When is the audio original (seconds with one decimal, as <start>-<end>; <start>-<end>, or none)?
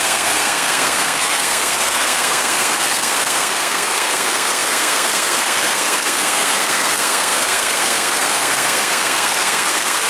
none